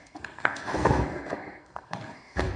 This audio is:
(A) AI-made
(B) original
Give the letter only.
A